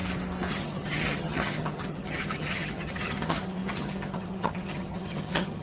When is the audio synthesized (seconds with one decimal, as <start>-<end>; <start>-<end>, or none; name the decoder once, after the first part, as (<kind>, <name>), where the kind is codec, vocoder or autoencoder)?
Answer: 0.5-5.6 (vocoder, HiFi-GAN)